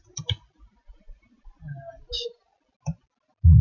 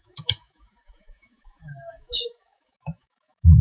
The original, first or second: first